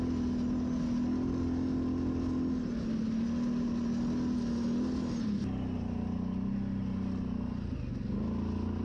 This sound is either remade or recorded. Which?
recorded